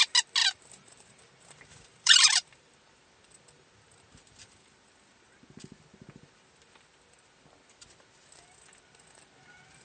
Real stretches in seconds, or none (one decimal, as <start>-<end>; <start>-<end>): 0.0-0.4; 3.1-9.8